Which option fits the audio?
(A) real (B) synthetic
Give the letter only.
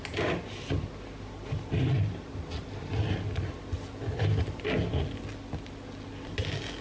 A